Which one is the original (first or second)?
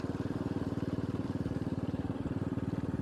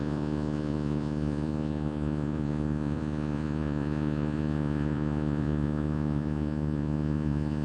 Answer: first